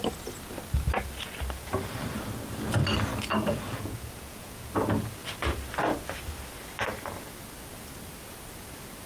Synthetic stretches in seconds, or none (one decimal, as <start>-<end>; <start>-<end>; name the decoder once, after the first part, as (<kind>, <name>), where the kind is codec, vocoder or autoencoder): 3.5-4.7 (vocoder, Vocos)